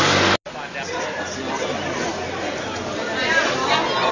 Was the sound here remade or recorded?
recorded